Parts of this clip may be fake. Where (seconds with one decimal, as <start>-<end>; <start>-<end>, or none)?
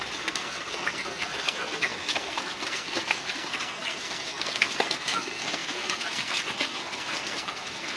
0.0-8.0